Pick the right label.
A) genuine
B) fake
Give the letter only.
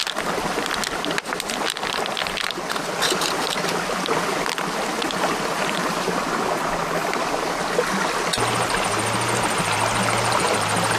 A